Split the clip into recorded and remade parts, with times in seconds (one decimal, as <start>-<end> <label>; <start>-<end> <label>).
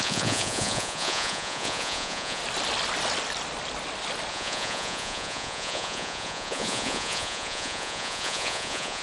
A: 0.0-2.4 remade; 2.4-4.3 recorded; 4.3-9.0 remade